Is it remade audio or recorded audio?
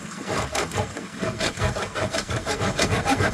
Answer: remade